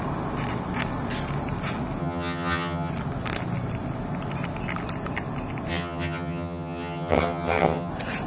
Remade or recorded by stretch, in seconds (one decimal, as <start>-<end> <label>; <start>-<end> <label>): 0.0-2.0 recorded; 2.0-2.9 remade; 2.9-5.7 recorded; 5.7-7.9 remade; 7.9-8.3 recorded